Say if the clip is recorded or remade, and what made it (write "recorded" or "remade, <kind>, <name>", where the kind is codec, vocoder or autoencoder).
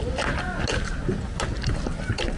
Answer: recorded